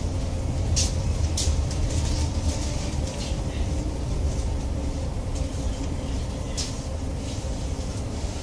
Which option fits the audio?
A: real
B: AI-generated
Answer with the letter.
B